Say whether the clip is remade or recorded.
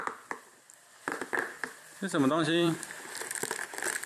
remade